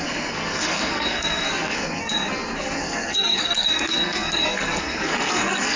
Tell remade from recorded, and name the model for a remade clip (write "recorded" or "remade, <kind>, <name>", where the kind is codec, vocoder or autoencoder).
remade, codec, SNAC